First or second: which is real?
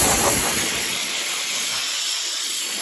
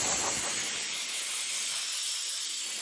second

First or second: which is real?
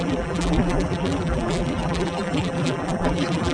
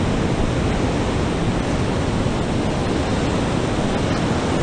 second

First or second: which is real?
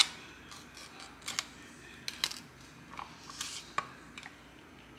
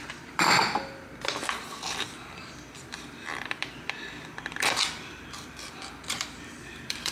first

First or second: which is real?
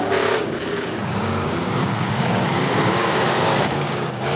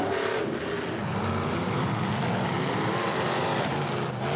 second